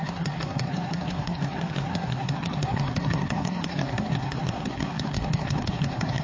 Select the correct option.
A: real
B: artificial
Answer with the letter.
B